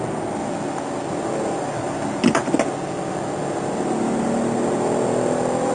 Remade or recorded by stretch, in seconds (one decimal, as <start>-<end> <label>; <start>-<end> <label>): 0.0-5.7 recorded